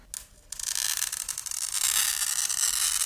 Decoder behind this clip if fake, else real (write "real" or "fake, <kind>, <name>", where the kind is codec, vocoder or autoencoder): real